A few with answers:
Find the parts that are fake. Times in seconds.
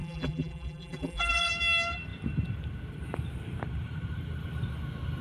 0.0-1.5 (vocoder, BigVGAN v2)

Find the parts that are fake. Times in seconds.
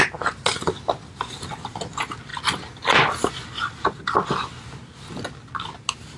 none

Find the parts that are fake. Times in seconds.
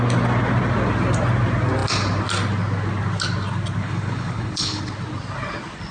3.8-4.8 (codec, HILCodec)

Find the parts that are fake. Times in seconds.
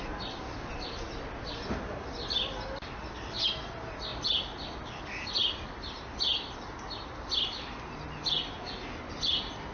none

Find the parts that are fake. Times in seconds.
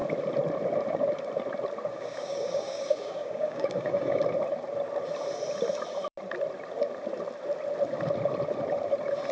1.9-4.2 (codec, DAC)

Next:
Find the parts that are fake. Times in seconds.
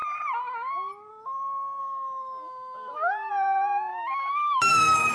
1.8-3.3 (autoencoder, DAC-VAE); 3.9-5.1